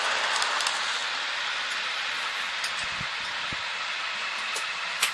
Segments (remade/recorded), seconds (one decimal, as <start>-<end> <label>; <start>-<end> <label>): 0.0-5.1 recorded